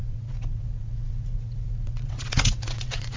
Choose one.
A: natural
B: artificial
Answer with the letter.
B